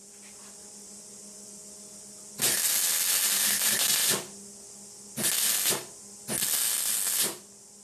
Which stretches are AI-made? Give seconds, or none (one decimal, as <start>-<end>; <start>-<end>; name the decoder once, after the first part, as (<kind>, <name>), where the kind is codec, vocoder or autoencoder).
none

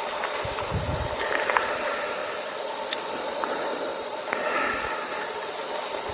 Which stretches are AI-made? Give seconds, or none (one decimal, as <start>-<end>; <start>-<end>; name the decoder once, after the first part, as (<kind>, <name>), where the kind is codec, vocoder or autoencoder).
0.0-2.2 (vocoder, BigVGAN v2); 3.2-3.7